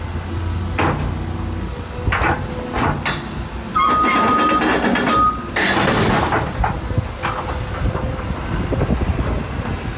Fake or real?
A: real